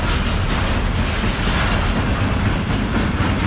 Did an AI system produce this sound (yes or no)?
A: no